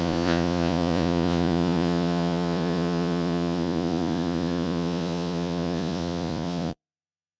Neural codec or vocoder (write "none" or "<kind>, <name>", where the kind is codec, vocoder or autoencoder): vocoder, Vocos